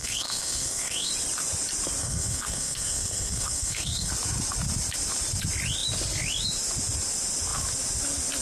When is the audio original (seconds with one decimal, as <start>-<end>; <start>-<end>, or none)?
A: 1.1-2.0; 4.1-8.4